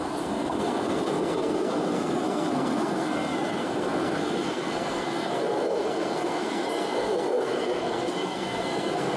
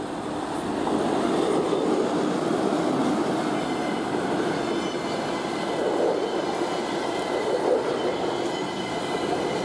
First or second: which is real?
second